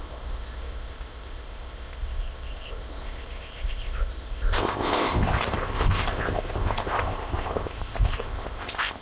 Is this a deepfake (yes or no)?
yes